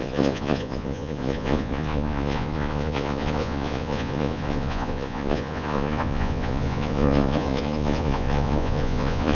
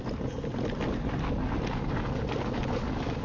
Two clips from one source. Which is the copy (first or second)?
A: first